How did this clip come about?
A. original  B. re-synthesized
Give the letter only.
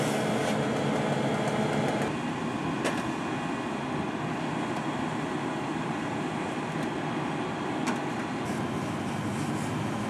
A